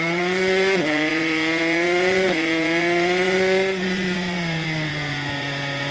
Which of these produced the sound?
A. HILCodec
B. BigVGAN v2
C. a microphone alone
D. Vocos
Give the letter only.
D